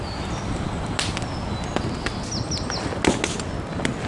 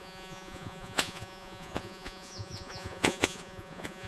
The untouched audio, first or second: first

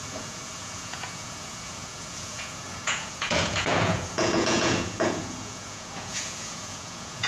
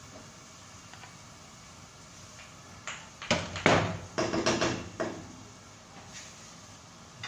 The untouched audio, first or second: second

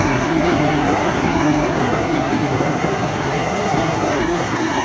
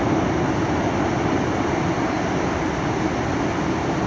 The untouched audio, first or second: second